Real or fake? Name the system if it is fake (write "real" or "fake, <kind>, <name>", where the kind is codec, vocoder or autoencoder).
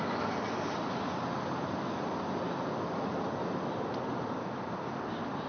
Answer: real